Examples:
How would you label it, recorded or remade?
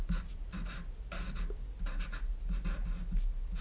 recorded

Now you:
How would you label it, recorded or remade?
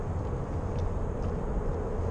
recorded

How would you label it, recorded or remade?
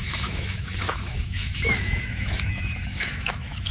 remade